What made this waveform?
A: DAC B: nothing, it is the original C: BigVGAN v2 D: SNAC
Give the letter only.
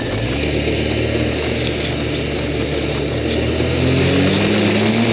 B